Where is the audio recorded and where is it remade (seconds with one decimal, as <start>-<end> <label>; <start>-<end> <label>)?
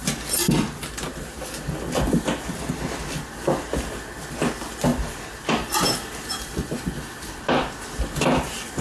0.0-2.4 remade; 2.4-4.9 recorded; 4.9-7.4 remade; 7.4-8.8 recorded